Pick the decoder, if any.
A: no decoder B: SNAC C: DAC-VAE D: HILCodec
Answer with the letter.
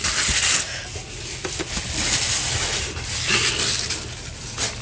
A